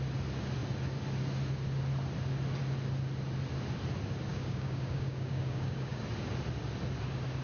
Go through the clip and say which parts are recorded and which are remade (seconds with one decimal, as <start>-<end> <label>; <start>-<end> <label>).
0.0-4.3 recorded; 4.3-6.0 remade; 6.0-7.4 recorded